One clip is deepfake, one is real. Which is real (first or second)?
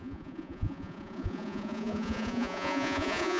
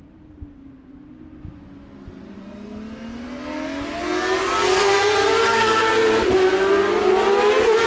second